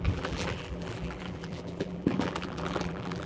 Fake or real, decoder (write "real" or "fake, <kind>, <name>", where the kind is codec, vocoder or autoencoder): fake, vocoder, BigVGAN v2